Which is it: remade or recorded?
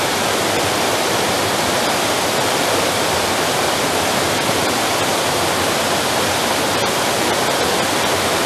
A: recorded